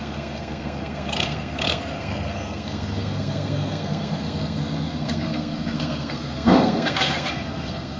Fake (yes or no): yes